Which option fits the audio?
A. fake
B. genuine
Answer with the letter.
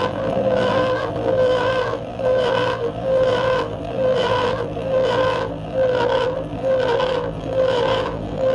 A